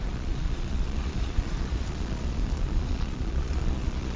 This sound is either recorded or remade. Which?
remade